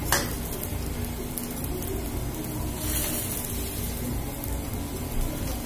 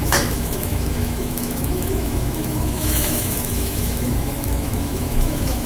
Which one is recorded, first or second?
first